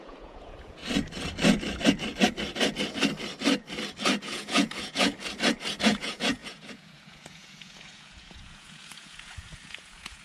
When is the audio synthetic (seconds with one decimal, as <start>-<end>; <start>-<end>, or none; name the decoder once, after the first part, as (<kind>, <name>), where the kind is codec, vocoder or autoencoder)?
0.0-0.8 (vocoder, Vocos); 4.2-5.1; 5.8-10.2